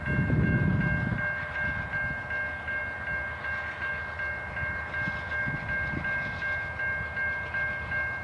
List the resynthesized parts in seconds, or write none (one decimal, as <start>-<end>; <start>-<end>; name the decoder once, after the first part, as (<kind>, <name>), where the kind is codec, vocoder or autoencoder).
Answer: none